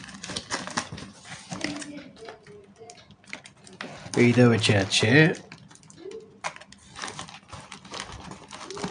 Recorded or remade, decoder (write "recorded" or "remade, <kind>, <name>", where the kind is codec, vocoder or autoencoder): recorded